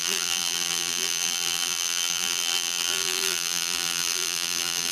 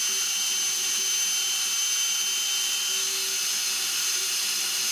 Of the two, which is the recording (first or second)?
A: second